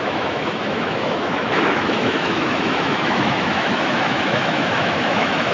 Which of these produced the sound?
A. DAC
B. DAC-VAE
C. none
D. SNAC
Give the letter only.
B